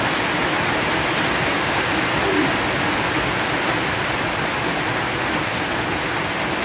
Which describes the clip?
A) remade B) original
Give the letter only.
B